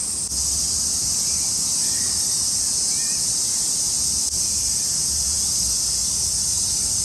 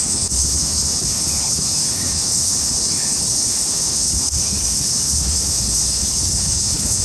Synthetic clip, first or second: second